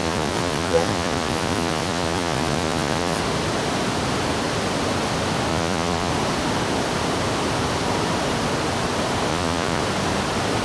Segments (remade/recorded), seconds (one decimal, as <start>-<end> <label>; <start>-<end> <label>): 0.0-3.2 remade; 3.2-5.5 recorded; 5.5-6.1 remade; 6.1-9.3 recorded; 9.3-9.8 remade; 9.8-10.6 recorded